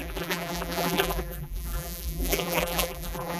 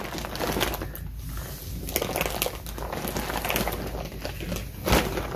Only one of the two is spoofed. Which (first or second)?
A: first